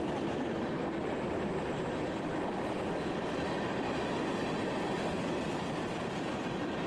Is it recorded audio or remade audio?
recorded